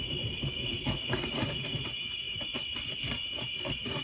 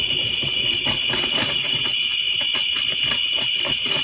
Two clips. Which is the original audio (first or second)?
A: second